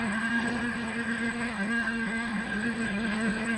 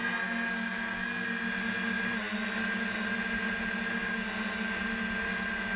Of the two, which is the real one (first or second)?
second